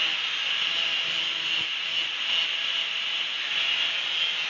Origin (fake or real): real